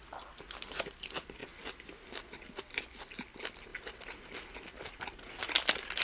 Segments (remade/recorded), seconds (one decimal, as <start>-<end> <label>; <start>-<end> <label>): 0.0-6.0 recorded